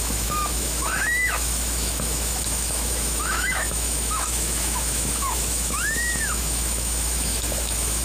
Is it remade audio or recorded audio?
remade